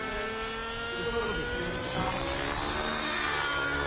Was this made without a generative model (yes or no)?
yes